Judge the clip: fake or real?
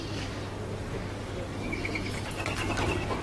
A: real